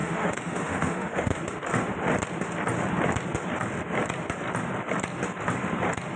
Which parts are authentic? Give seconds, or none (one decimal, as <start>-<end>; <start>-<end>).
1.4-6.2